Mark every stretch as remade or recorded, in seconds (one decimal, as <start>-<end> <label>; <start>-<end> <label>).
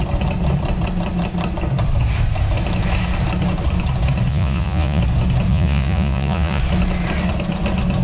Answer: 0.0-4.3 recorded; 4.3-5.0 remade; 5.0-5.5 recorded; 5.5-6.6 remade; 6.6-8.0 recorded